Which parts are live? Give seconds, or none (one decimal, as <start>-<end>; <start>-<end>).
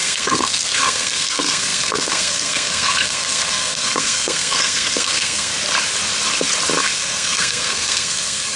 5.5-6.8